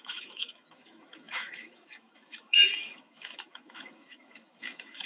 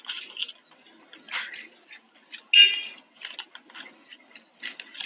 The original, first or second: second